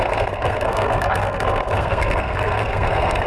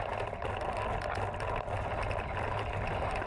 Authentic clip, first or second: second